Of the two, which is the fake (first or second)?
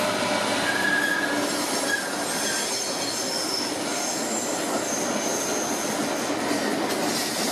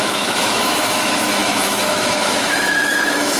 second